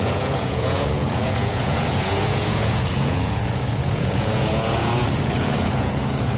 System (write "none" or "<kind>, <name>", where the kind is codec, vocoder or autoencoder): vocoder, Vocos